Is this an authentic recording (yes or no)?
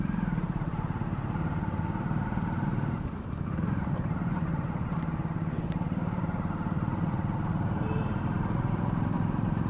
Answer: no